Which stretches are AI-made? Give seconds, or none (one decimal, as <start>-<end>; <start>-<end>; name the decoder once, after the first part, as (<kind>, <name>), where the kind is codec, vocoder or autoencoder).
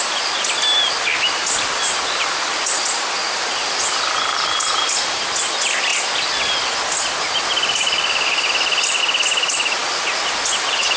none